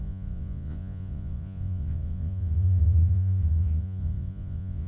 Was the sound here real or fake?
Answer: fake